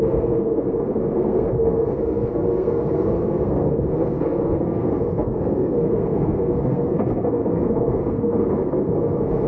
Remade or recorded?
remade